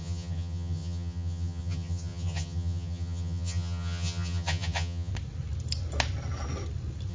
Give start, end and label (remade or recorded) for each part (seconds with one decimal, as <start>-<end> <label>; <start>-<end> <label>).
0.0-5.1 remade; 5.1-7.1 recorded